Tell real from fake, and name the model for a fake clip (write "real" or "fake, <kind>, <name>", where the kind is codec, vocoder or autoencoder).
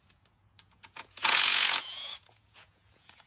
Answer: fake, vocoder, Vocos